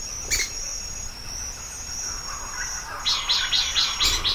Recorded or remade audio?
recorded